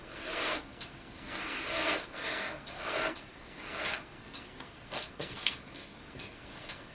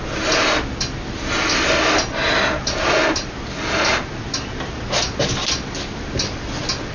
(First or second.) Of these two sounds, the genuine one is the second